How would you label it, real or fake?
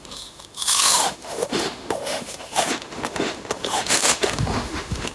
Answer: fake